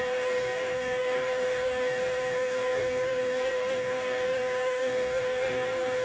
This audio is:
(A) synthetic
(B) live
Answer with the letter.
A